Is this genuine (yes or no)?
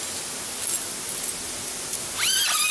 yes